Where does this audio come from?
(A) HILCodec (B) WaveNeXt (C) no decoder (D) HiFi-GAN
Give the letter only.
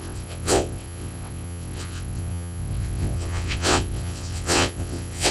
B